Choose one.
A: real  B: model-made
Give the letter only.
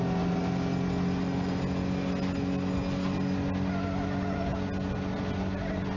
A